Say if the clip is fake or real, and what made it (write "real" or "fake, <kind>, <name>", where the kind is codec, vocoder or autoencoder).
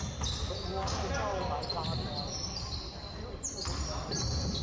real